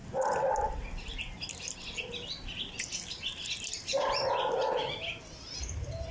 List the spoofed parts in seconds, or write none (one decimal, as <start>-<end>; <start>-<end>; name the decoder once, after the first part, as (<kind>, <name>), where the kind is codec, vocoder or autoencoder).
none